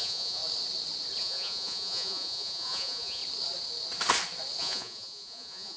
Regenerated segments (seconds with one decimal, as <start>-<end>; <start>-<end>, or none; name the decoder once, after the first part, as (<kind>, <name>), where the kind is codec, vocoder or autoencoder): 0.0-0.4 (vocoder, Vocos); 1.2-3.2; 4.6-5.8